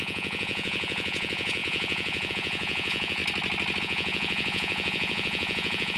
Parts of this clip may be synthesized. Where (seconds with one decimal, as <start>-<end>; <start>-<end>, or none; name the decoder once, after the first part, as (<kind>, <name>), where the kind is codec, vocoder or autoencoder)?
0.0-3.2 (vocoder, Vocos); 3.8-6.0